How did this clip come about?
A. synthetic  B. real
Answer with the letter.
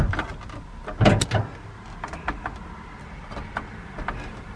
B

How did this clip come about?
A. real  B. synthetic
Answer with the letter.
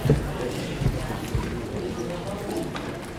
A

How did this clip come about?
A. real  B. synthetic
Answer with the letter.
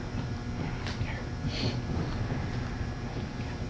A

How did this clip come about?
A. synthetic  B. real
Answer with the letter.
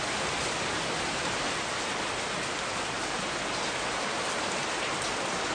B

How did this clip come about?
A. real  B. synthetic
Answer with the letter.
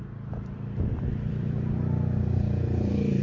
B